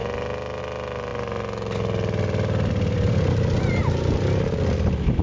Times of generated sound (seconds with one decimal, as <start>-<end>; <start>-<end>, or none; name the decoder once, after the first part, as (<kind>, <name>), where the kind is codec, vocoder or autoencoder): 1.1-4.2 (vocoder, BigVGAN v2)